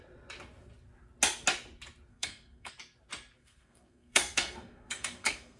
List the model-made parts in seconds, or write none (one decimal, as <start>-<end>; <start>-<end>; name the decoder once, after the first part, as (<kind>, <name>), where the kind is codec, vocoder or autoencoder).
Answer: 2.1-2.7 (codec, SNAC); 3.4-5.6